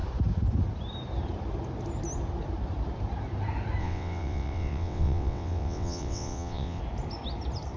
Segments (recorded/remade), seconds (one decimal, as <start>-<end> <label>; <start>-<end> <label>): 0.0-3.8 recorded; 3.8-6.8 remade; 6.8-7.8 recorded